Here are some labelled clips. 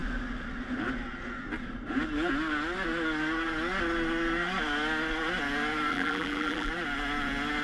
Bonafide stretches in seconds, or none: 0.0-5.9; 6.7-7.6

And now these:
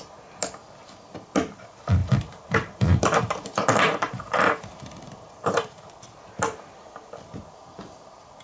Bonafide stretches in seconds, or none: 0.0-2.0; 5.9-8.4

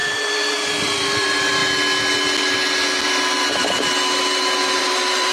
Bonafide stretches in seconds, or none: 1.6-4.8

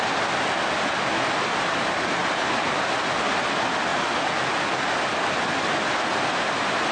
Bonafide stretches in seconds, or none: 0.0-6.9